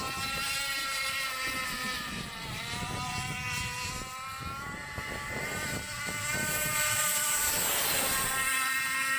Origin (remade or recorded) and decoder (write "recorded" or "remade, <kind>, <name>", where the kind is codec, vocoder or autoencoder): remade, vocoder, BigVGAN v2